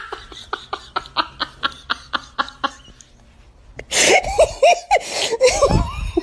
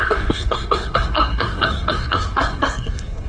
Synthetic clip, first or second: second